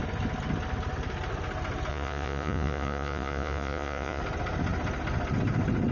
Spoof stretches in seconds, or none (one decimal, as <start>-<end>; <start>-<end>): 1.9-4.2